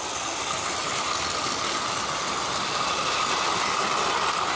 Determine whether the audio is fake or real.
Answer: real